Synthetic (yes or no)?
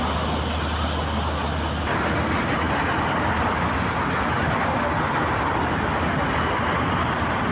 no